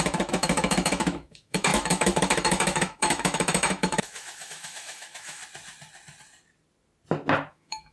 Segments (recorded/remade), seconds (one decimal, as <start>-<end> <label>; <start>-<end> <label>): 0.0-5.4 remade; 5.4-7.5 recorded; 7.5-7.9 remade